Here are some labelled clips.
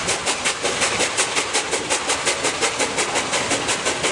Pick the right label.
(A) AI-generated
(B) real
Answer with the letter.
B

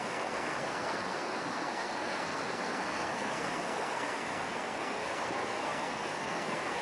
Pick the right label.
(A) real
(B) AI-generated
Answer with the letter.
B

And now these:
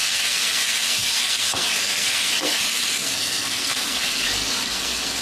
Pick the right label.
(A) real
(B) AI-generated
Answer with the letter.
B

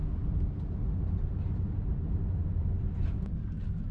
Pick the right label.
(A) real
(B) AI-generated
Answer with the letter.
A